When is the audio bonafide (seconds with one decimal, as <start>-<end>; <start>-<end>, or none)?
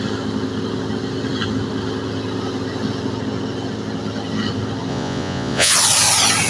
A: 0.0-4.9; 5.7-6.5